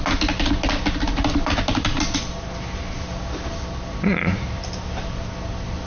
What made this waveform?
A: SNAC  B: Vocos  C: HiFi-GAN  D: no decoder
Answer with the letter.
D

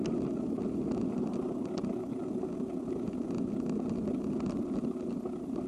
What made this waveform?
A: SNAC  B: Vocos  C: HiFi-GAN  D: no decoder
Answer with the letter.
D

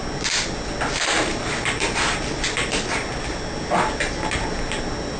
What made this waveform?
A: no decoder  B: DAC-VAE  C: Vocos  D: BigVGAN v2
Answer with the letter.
A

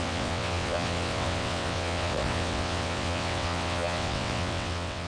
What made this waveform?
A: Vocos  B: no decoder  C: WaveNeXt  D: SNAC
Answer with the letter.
C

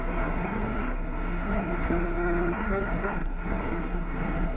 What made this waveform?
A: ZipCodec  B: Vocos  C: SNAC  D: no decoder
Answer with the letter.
C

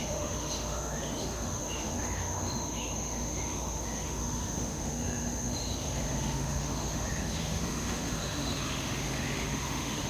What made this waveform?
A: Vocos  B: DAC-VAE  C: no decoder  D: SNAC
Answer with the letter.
B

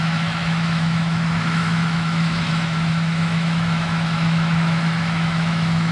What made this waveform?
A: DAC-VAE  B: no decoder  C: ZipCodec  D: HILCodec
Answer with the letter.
A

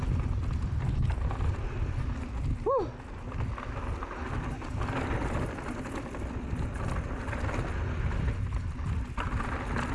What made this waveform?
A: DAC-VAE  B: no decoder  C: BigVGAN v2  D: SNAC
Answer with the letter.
B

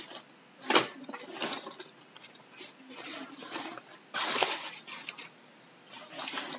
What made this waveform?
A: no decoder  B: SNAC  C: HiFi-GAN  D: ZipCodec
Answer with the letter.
A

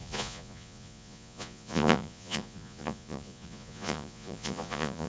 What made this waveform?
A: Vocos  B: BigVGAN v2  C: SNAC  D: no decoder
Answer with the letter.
A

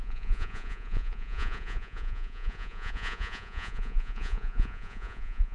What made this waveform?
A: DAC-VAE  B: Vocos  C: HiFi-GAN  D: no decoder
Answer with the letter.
B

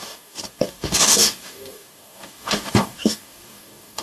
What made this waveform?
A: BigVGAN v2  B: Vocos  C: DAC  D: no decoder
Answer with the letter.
C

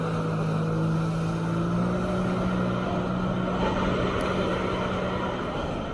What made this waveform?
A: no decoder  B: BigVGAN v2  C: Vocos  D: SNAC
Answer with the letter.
A